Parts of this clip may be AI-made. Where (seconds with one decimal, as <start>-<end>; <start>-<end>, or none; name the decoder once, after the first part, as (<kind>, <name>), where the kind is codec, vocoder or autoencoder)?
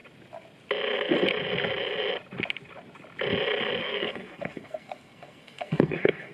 3.8-6.3 (codec, SNAC)